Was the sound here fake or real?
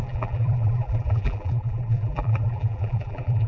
fake